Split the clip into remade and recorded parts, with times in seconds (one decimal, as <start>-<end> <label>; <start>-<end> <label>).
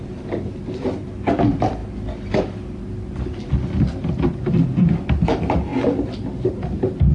0.0-7.1 recorded